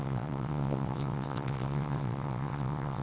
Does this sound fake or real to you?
fake